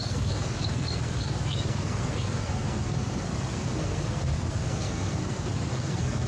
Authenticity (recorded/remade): remade